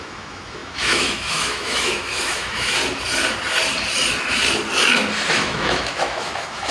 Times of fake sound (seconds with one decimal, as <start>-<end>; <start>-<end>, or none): 0.0-2.8; 5.3-6.7

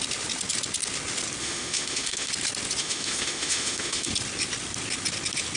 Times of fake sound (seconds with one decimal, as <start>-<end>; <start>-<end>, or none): 1.4-2.3; 2.8-4.1

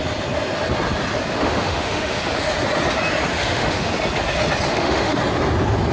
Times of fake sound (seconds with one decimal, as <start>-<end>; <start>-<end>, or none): 1.3-2.2; 3.3-3.9; 4.7-5.2

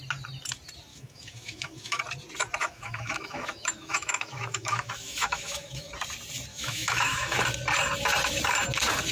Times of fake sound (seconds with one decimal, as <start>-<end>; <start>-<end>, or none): 0.9-2.0; 2.6-5.9; 6.5-7.4